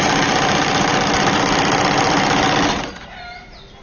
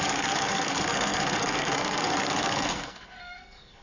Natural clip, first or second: first